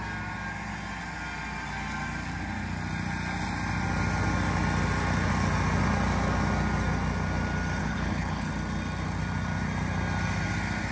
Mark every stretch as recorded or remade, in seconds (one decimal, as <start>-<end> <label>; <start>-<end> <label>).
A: 0.0-7.8 recorded; 7.8-8.5 remade; 8.5-10.9 recorded